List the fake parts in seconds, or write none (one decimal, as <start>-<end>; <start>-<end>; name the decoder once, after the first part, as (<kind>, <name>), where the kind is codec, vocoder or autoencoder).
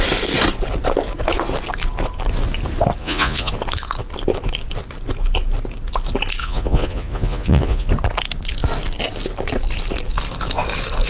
3.0-3.5 (vocoder, Vocos); 6.4-7.9